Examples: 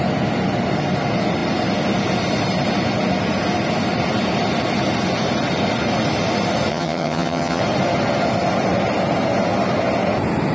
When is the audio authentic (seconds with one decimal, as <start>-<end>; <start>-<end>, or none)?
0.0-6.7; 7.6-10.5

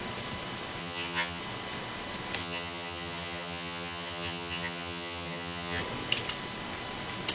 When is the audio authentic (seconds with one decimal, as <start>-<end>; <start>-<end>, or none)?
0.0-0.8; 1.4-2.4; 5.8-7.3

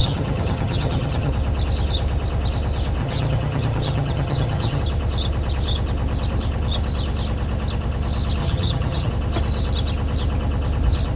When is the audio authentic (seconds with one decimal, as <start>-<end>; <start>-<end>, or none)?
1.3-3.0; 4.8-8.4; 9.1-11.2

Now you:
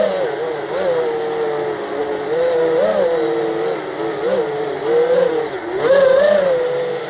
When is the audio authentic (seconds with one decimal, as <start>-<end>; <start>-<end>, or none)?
0.0-7.1

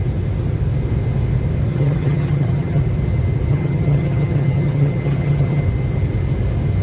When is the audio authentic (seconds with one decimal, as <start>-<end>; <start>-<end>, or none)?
0.0-1.7; 2.8-3.5; 5.6-6.8

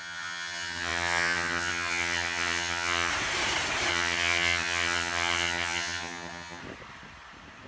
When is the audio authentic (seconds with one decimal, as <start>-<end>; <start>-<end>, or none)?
3.1-3.9; 6.6-7.7

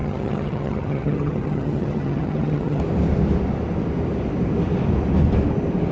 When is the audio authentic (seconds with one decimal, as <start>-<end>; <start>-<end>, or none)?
2.8-5.9